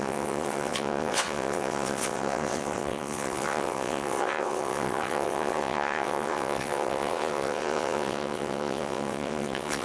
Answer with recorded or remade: remade